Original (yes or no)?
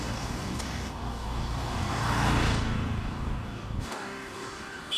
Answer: no